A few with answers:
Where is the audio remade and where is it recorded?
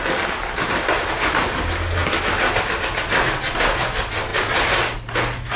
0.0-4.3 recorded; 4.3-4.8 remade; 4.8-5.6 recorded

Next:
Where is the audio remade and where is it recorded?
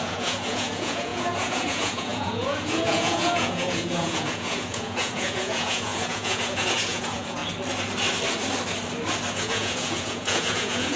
0.0-7.4 remade; 7.4-9.3 recorded; 9.3-11.0 remade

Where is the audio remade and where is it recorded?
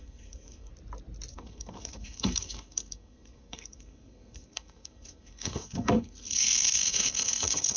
0.0-0.7 remade; 0.7-1.3 recorded; 1.3-7.8 remade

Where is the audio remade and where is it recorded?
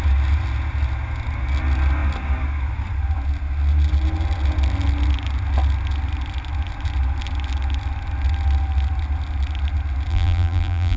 0.0-10.1 recorded; 10.1-11.0 remade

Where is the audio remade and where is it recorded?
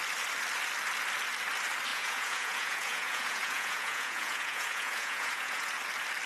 0.0-1.9 recorded; 1.9-5.7 remade; 5.7-6.3 recorded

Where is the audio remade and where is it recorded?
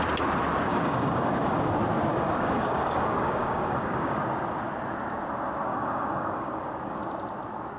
0.0-0.7 recorded; 0.7-1.7 remade; 1.7-2.1 recorded; 2.1-4.2 remade; 4.2-5.7 recorded; 5.7-7.0 remade; 7.0-7.8 recorded